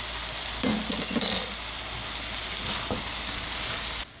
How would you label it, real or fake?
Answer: real